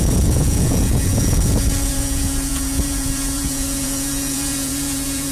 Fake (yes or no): yes